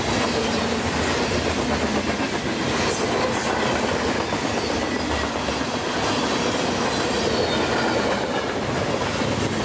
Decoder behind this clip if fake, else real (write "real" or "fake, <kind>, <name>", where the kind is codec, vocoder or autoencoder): real